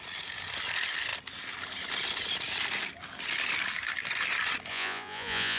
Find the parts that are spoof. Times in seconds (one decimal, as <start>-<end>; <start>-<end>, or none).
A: 4.7-5.6